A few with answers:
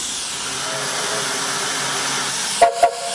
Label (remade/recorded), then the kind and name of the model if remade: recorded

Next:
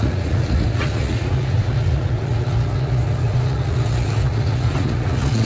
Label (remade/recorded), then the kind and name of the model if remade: remade, vocoder, Vocos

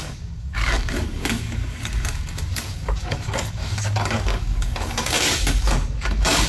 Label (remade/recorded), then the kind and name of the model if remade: remade, codec, DAC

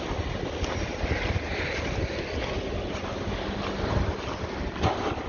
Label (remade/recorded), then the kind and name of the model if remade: recorded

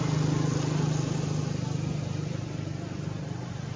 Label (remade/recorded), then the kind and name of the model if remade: recorded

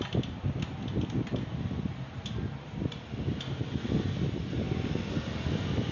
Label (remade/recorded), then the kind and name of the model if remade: recorded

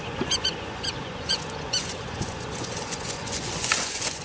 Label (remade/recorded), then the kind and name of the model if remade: remade, vocoder, Vocos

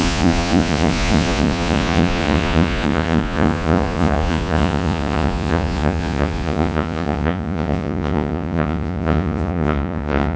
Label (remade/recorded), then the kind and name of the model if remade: remade, vocoder, Vocos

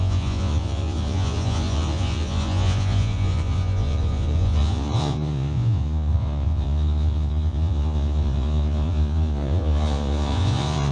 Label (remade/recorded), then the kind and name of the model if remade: remade, vocoder, Vocos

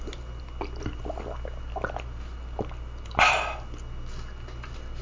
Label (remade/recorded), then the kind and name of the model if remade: recorded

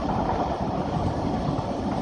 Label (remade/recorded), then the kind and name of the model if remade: remade, vocoder, BigVGAN v2